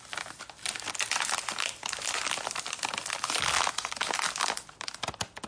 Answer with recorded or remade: recorded